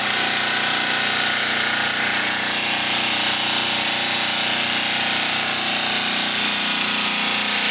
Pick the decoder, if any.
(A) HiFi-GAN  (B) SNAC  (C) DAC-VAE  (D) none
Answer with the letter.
D